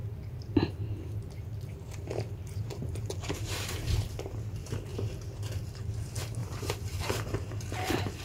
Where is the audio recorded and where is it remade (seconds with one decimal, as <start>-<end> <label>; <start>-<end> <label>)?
0.0-3.0 remade; 3.0-6.4 recorded; 6.4-7.1 remade; 7.1-8.2 recorded